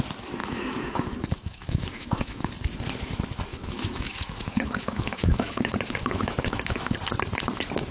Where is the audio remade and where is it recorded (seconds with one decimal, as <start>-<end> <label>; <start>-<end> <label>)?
0.0-0.4 recorded; 0.4-2.5 remade; 2.5-3.5 recorded; 3.5-7.0 remade; 7.0-7.9 recorded